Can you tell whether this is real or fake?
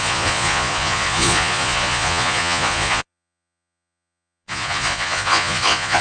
fake